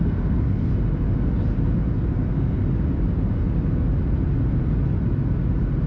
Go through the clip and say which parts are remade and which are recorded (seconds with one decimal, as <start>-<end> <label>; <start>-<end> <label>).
0.0-0.7 remade; 0.7-1.9 recorded; 1.9-2.6 remade; 2.6-5.9 recorded